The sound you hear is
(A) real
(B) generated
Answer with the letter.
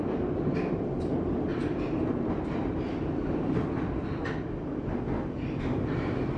A